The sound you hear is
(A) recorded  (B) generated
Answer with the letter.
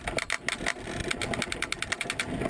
A